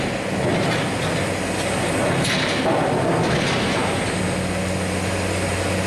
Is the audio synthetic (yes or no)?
no